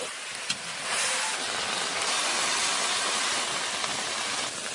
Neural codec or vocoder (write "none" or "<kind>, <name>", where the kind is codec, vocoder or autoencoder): none